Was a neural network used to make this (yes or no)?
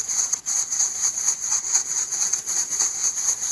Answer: yes